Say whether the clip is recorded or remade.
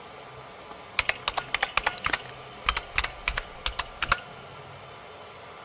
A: recorded